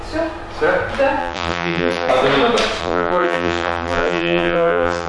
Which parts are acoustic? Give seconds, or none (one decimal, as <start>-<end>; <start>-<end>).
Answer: 0.0-1.2; 2.1-2.8